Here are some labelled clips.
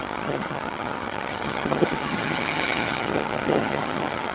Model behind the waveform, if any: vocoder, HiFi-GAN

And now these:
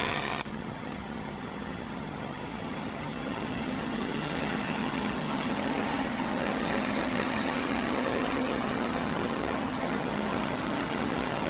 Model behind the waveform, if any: vocoder, HiFi-GAN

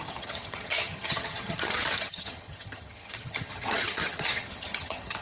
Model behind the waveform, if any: vocoder, HiFi-GAN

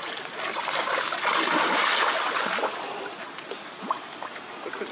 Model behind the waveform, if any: none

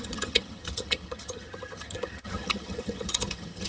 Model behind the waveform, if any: vocoder, HiFi-GAN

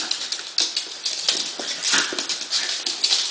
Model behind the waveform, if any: none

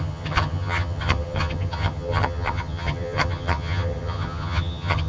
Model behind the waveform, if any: vocoder, HiFi-GAN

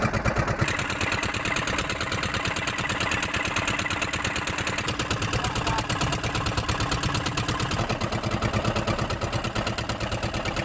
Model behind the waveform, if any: none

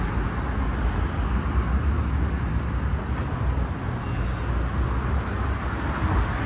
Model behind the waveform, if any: none